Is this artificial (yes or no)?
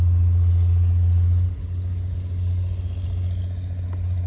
no